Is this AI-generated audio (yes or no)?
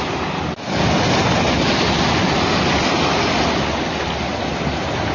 no